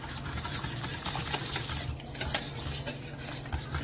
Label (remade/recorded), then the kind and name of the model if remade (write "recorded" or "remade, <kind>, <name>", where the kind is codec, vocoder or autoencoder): recorded